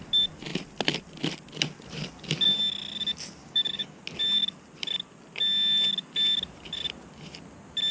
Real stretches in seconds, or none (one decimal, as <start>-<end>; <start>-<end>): 0.0-3.4; 4.0-7.9

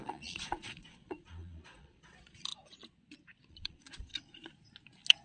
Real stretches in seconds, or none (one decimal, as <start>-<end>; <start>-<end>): 2.5-3.5; 4.1-5.2